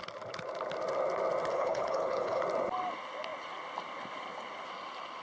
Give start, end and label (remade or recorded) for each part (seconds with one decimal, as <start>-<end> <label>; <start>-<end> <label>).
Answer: 0.0-1.5 recorded; 1.5-2.4 remade; 2.4-5.2 recorded